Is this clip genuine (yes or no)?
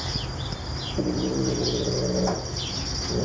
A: yes